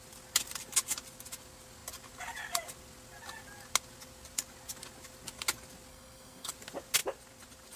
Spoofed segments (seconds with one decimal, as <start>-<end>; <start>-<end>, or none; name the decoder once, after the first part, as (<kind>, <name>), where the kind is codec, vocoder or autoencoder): 5.9-6.5 (codec, SNAC)